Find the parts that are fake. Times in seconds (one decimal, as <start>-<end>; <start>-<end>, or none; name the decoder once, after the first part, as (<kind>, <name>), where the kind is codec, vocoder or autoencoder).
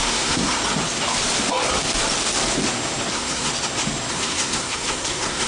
0.0-0.6 (codec, SNAC); 3.1-3.5; 4.1-5.5